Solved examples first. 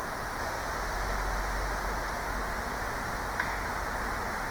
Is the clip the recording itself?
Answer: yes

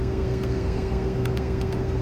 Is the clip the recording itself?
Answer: no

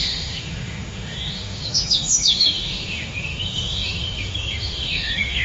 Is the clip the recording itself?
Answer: no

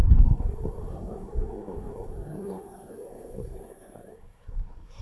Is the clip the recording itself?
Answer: no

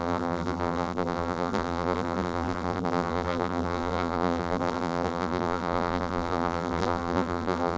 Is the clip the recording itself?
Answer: no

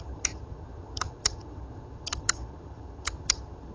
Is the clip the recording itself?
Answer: no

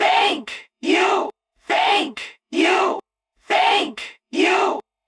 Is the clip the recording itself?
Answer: no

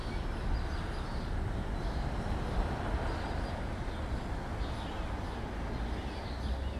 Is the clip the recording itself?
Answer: yes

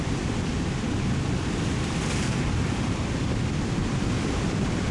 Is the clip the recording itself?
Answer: no